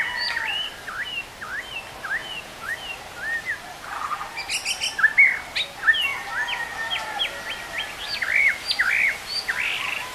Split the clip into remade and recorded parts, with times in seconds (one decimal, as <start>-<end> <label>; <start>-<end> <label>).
0.0-2.2 recorded; 2.2-2.7 remade; 2.7-10.1 recorded